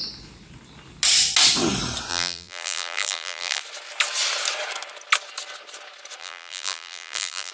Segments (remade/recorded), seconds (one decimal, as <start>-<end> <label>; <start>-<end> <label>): 0.0-2.1 recorded; 2.1-3.6 remade; 3.6-6.2 recorded; 6.2-7.5 remade